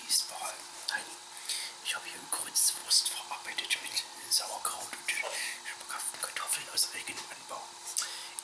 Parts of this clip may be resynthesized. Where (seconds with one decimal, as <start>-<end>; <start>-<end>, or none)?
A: none